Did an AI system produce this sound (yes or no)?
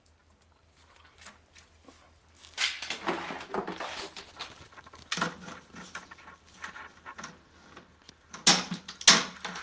no